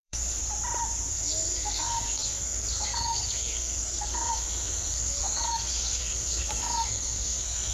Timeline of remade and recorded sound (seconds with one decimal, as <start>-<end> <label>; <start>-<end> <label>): 0.0-0.4 remade; 0.4-1.1 recorded; 1.1-7.7 remade